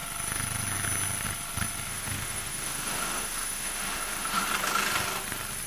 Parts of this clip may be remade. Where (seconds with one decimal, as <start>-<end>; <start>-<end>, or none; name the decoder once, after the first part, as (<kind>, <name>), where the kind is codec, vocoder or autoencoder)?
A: 1.9-4.5 (autoencoder, DAC-VAE)